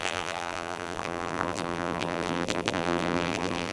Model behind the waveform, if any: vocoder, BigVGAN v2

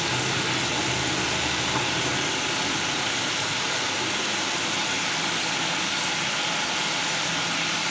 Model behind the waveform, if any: none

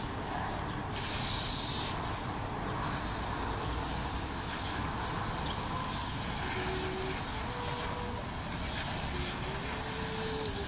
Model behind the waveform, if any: none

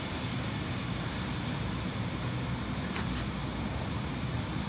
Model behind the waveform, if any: none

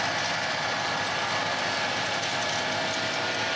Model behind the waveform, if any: none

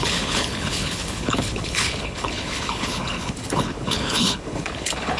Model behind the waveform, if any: codec, HILCodec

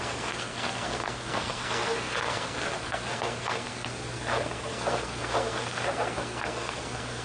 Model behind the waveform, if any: codec, SNAC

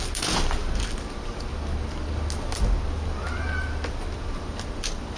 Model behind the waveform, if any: none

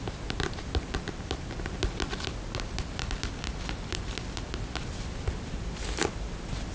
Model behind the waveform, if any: vocoder, BigVGAN v2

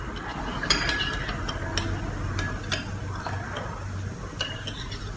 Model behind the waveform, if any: none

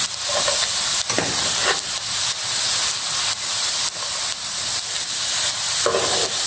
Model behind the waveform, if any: none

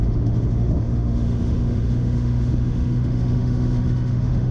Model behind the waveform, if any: autoencoder, DAC-VAE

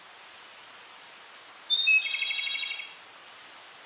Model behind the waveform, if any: none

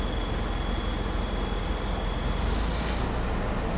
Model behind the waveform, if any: none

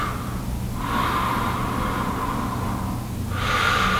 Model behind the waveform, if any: none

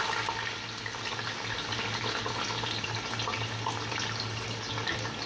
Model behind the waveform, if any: none